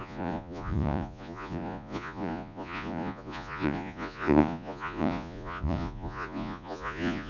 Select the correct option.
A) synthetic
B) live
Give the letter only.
A